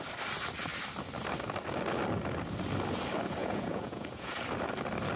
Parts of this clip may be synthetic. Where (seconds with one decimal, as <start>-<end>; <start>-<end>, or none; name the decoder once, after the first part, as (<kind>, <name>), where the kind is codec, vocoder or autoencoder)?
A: 3.4-4.3 (vocoder, Vocos)